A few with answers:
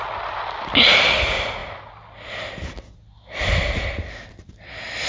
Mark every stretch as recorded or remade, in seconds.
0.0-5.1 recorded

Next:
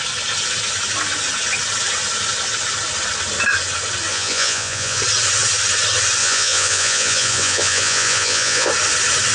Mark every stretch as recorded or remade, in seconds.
0.0-4.1 recorded; 4.1-5.0 remade; 5.0-6.2 recorded; 6.2-8.7 remade; 8.7-9.3 recorded

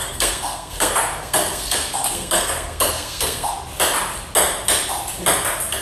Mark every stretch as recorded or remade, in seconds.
0.0-3.5 remade; 3.5-5.8 recorded

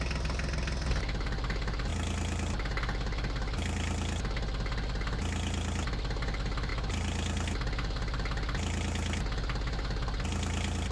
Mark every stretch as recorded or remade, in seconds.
0.0-10.9 recorded

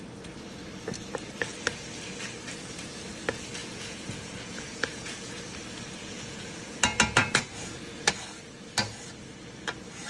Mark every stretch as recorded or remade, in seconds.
0.0-3.6 recorded; 3.6-5.3 remade; 5.3-6.0 recorded; 6.0-6.8 remade; 6.8-7.2 recorded; 7.2-8.0 remade; 8.0-10.1 recorded

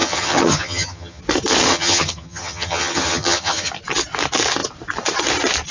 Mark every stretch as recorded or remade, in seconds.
0.0-1.2 remade; 1.2-1.7 recorded; 1.7-3.7 remade; 3.7-5.7 recorded

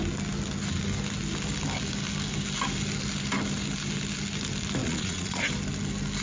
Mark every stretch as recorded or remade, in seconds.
0.0-4.8 recorded; 4.8-5.4 remade; 5.4-6.2 recorded

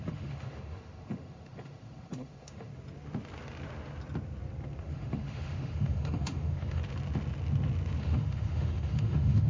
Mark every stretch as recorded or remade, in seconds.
0.0-2.7 remade; 2.7-4.8 recorded; 4.8-6.8 remade; 6.8-8.0 recorded; 8.0-9.5 remade